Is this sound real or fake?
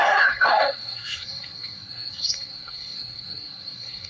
fake